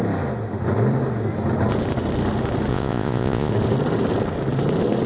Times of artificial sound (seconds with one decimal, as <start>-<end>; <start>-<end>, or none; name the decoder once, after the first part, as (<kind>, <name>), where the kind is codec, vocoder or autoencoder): 2.7-3.5 (vocoder, Vocos)